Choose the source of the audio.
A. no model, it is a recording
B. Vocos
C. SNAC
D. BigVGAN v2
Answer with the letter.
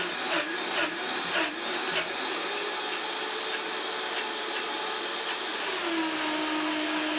A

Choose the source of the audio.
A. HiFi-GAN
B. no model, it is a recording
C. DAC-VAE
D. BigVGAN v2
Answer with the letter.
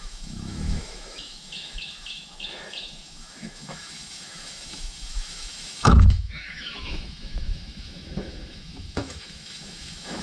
C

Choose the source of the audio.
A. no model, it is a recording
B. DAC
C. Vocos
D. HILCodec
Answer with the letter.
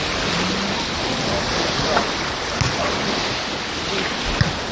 A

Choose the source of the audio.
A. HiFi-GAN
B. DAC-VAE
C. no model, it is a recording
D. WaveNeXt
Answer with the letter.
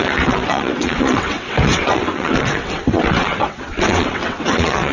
D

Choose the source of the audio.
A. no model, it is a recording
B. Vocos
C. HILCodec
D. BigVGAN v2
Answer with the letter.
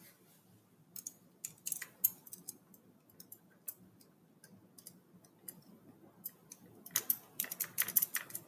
A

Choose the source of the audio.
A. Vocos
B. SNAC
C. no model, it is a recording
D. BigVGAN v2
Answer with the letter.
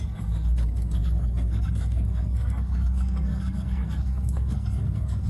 B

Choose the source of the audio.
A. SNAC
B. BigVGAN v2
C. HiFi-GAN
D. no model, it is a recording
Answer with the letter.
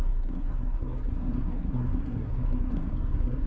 A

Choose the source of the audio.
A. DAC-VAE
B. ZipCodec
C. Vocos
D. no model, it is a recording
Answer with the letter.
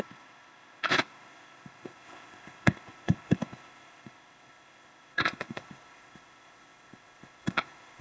B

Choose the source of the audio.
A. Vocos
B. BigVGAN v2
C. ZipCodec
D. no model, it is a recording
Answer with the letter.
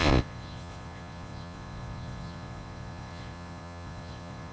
A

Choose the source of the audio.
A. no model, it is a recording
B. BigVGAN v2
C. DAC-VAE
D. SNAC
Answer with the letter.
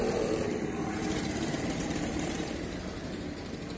A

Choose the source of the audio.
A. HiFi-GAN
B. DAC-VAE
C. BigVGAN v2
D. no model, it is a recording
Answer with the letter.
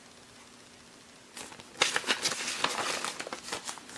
D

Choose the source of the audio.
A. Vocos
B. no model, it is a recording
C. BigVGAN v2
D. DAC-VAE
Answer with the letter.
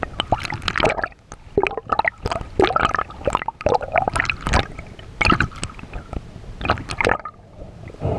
B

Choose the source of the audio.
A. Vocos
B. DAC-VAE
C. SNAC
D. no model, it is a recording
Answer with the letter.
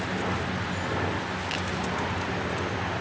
D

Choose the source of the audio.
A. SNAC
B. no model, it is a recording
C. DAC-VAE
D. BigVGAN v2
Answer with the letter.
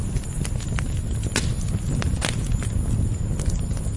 B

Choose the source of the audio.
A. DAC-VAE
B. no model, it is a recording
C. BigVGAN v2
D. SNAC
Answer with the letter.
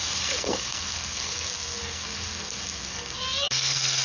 D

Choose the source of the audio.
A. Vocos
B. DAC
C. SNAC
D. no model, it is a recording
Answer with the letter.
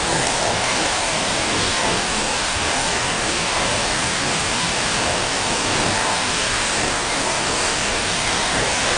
B